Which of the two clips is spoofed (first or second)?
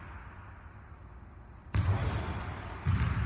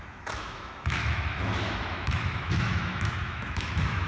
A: second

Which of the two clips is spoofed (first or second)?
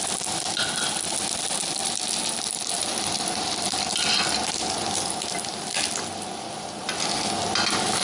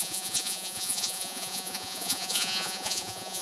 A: second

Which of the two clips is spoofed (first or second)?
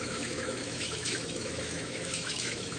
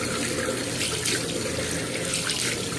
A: first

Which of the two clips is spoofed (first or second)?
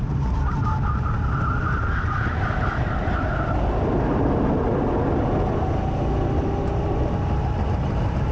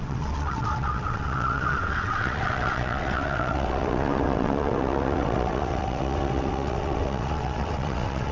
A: second